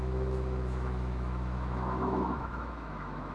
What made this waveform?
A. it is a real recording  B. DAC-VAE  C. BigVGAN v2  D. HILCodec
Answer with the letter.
B